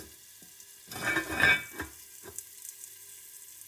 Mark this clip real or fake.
real